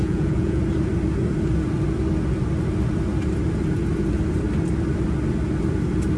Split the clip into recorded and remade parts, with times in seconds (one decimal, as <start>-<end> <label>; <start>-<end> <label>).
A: 0.0-0.6 remade; 0.6-6.2 recorded